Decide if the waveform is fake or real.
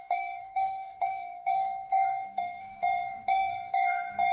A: fake